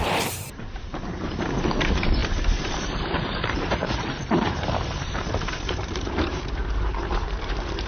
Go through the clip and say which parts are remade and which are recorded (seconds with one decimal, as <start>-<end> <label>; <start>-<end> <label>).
0.0-7.9 remade